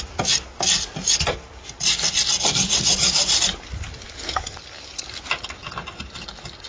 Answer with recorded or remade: recorded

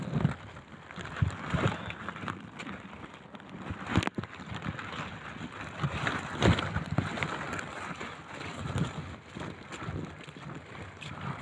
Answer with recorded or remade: recorded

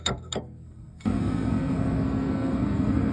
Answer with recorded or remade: remade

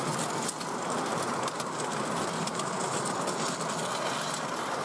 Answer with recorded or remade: recorded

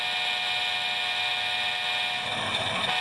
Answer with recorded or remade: recorded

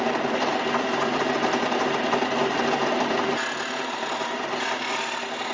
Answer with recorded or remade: recorded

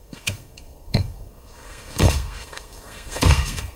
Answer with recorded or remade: remade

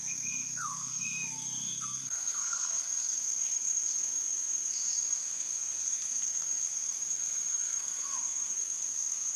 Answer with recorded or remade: remade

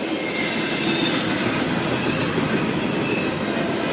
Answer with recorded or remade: recorded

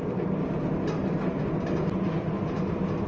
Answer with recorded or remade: recorded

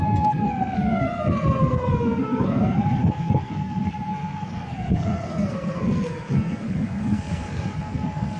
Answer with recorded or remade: remade